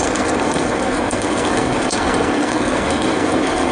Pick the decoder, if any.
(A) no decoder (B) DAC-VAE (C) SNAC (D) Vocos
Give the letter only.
C